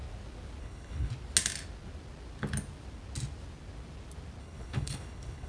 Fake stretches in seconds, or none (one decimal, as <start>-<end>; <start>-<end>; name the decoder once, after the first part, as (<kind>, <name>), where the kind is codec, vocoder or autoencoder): 0.6-1.1 (codec, HILCodec); 4.4-5.5